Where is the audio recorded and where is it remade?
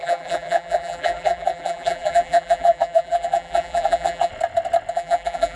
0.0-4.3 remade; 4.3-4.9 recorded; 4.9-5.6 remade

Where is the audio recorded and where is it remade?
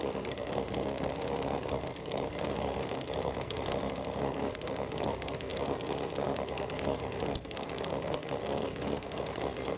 0.0-9.8 remade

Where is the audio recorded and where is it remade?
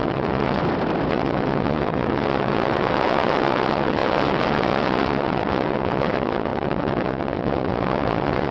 0.0-0.6 remade; 0.6-1.1 recorded; 1.1-8.5 remade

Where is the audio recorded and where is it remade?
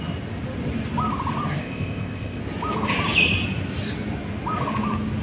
0.0-1.6 recorded; 1.6-2.4 remade; 2.4-5.2 recorded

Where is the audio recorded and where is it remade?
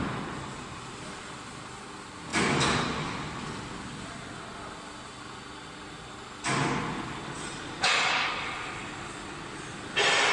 0.0-10.3 recorded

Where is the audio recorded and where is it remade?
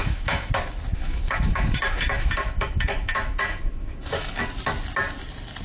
0.0-0.5 remade; 0.5-1.0 recorded; 1.0-4.4 remade; 4.4-5.6 recorded